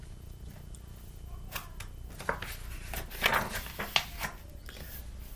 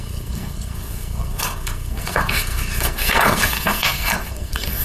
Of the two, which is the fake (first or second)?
second